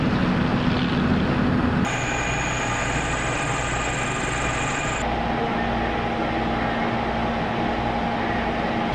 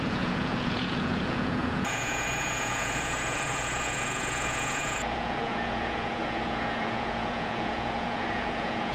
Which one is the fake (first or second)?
second